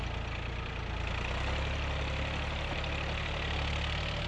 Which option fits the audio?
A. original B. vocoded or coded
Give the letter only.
A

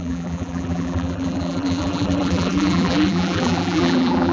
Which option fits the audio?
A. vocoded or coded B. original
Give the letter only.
A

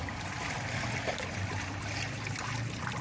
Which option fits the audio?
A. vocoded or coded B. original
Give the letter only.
B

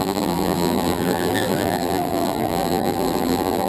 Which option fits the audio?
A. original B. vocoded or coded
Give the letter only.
B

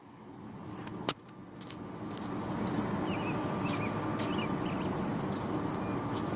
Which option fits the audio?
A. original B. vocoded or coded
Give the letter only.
A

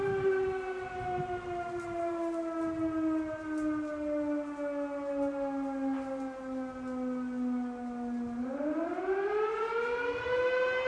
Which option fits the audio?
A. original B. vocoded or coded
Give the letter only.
A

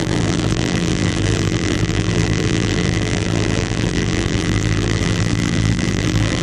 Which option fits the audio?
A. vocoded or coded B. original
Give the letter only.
A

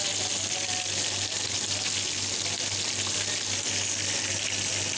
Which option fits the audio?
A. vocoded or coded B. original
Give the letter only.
B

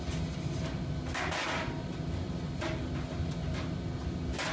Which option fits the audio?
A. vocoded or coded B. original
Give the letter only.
B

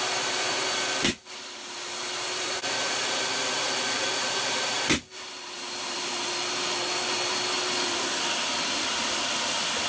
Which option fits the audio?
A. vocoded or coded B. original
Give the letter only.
A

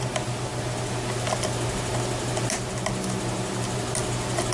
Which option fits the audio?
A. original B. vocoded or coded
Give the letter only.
A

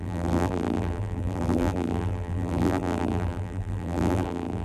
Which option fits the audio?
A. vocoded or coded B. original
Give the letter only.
A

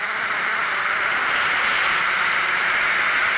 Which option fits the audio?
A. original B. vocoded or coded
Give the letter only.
B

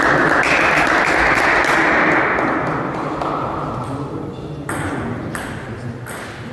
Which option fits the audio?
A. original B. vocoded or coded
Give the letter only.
A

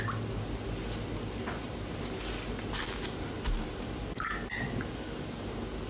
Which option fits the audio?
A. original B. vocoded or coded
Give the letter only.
A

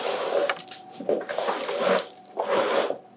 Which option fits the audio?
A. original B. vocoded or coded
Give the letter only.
A